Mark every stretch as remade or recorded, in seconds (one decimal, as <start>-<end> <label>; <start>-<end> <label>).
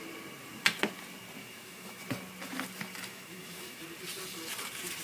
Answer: 0.0-1.4 recorded; 1.4-2.0 remade; 2.0-3.1 recorded; 3.1-3.8 remade; 3.8-5.0 recorded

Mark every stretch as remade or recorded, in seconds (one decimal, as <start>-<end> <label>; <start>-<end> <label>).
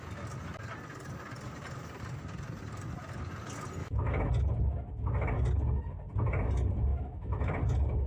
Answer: 0.0-3.8 recorded; 3.8-4.3 remade; 4.3-6.9 recorded; 6.9-7.6 remade; 7.6-8.1 recorded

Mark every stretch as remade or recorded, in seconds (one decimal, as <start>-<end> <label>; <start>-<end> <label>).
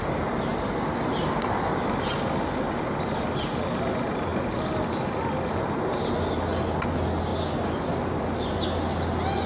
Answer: 0.0-9.5 recorded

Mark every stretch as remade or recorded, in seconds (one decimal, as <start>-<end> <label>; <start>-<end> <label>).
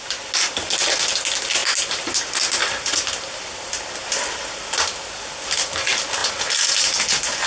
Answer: 0.0-7.5 recorded